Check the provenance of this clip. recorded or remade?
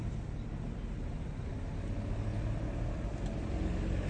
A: recorded